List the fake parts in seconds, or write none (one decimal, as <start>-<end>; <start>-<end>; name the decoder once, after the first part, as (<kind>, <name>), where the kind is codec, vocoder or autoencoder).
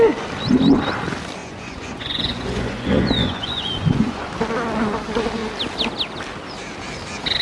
1.4-4.3 (vocoder, Vocos)